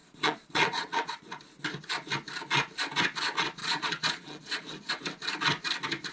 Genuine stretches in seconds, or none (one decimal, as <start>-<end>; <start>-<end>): 1.4-3.6; 4.9-6.1